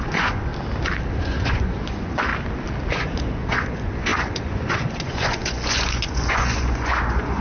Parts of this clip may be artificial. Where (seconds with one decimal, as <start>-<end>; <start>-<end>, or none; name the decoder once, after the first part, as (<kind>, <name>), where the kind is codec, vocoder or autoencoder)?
0.0-0.5 (vocoder, Vocos); 1.1-2.3; 2.9-7.4